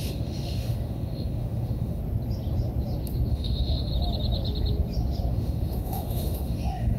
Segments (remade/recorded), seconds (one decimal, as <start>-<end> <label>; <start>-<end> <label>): 0.0-2.0 remade; 2.0-3.3 recorded; 3.3-3.9 remade; 3.9-5.3 recorded; 5.3-7.0 remade